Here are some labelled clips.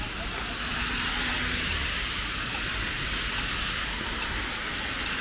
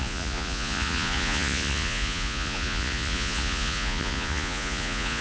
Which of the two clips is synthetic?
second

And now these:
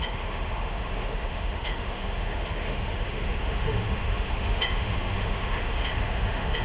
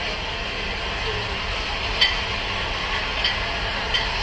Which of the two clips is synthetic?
first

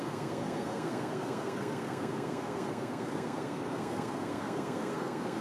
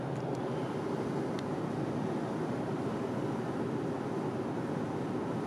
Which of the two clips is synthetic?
first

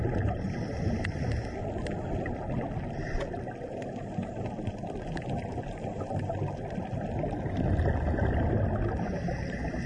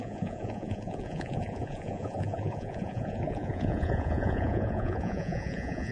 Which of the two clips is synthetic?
second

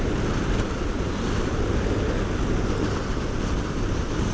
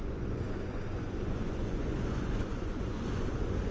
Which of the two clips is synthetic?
second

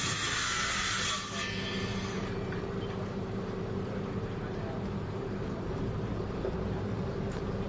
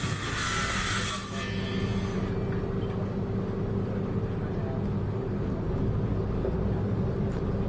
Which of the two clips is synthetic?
first